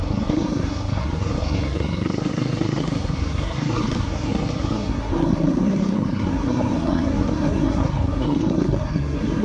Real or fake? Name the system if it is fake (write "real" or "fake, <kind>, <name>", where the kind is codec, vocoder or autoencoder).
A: fake, codec, SNAC